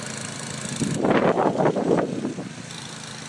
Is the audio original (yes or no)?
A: yes